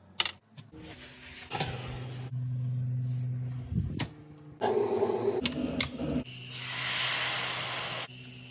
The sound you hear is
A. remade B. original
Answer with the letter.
B